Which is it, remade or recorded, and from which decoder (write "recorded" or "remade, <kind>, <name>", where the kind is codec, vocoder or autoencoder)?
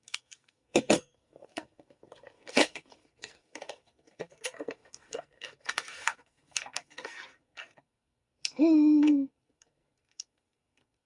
remade, codec, SNAC